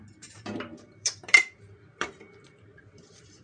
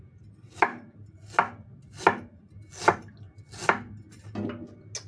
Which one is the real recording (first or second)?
second